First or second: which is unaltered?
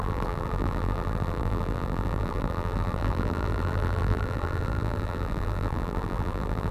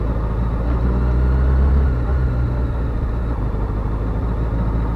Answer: second